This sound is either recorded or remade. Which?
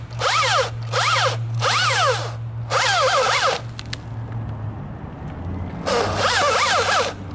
recorded